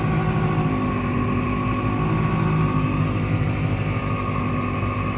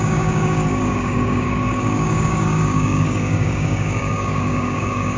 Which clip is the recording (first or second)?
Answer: first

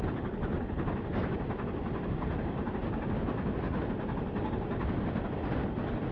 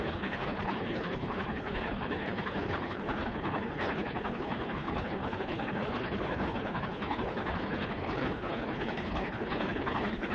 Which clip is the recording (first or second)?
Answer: first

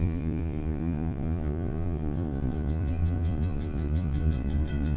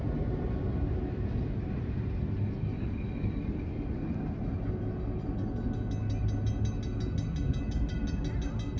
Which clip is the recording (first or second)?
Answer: second